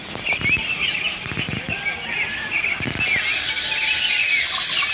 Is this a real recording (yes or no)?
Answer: yes